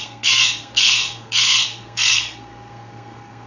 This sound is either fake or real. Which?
fake